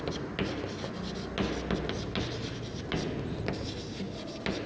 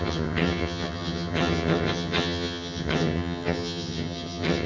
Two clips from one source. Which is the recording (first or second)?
first